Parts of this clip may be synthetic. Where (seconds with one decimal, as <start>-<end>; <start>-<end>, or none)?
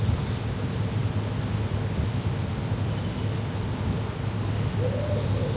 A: none